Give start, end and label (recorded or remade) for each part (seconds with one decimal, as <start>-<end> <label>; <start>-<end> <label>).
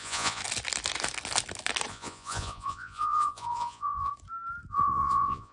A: 0.0-0.4 remade; 0.4-1.9 recorded; 1.9-4.1 remade; 4.1-4.7 recorded; 4.7-5.5 remade